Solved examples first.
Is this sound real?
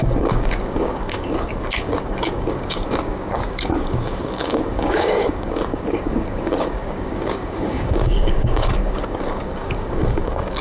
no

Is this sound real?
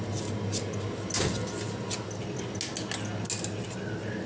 yes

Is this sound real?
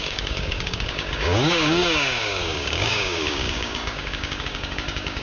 no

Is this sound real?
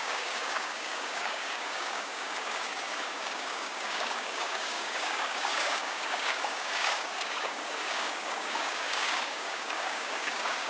no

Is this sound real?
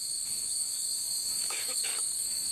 no